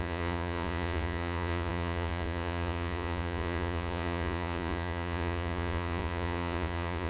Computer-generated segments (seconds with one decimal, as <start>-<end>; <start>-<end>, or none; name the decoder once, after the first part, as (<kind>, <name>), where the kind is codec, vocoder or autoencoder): 0.0-7.1 (vocoder, Vocos)